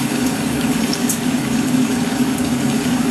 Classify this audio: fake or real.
fake